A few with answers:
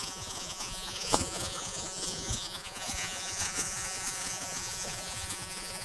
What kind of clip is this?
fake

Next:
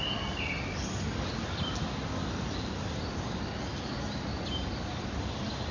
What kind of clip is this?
real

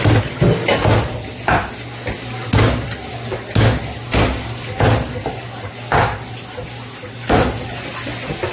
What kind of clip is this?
real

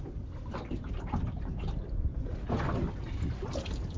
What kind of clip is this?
real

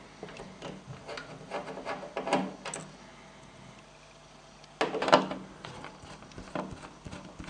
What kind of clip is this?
real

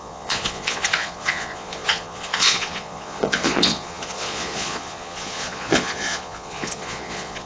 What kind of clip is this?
fake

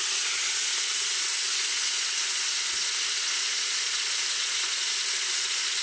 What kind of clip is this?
fake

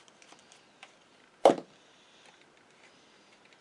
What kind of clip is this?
real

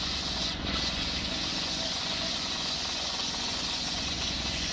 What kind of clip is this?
fake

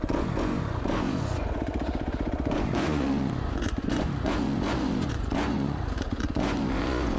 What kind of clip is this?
fake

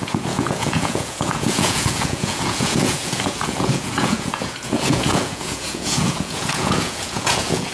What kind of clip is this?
fake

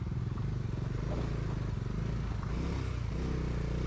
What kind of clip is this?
real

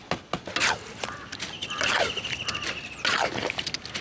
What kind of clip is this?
real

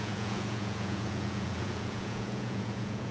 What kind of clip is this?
fake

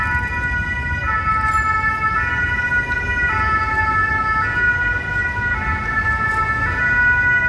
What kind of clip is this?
real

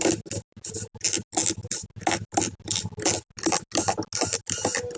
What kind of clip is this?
real